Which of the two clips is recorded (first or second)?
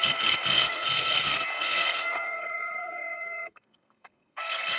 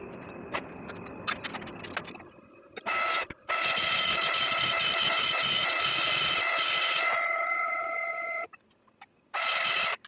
second